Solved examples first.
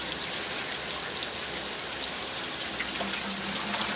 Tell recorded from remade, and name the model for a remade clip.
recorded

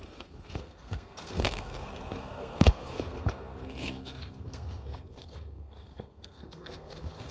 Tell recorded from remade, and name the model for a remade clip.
remade, codec, SNAC